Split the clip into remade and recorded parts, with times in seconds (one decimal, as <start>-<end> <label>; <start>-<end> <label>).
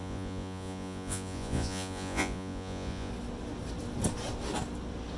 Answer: 0.0-3.1 remade; 3.1-5.2 recorded